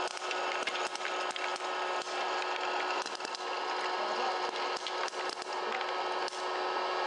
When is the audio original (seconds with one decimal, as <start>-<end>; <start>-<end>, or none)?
0.0-7.1